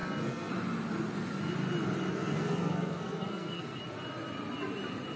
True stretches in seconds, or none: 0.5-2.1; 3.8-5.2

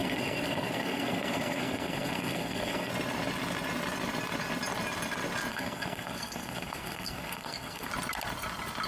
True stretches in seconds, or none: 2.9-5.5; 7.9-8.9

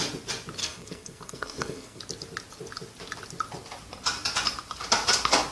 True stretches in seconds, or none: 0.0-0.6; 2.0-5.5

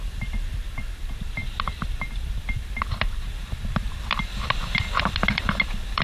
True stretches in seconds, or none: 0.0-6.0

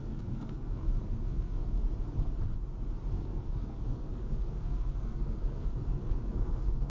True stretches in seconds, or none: 1.8-3.1

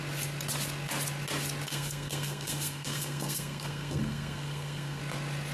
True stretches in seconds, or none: 0.0-1.7; 5.0-5.5

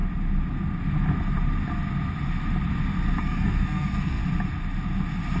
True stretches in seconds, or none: 0.0-3.2; 4.2-5.4